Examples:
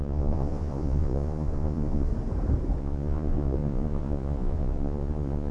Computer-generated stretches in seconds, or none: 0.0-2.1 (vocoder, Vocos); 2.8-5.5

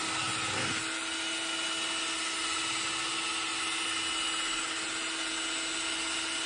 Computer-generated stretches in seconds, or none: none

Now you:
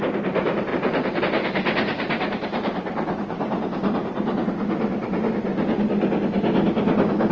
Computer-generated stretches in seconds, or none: 0.7-1.2 (vocoder, BigVGAN v2); 1.9-4.4

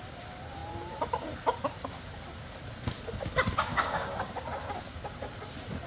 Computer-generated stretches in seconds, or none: 3.7-4.3 (codec, DAC)

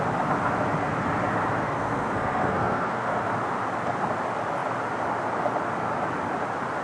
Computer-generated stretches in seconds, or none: 1.6-3.1 (codec, SNAC)

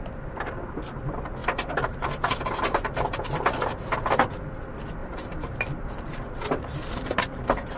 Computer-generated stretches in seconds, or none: 1.4-2.1 (vocoder, BigVGAN v2); 5.0-7.8